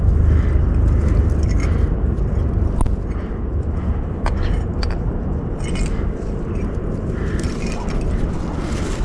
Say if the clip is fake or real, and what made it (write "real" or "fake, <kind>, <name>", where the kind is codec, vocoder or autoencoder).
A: real